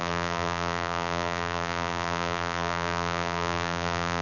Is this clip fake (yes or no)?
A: yes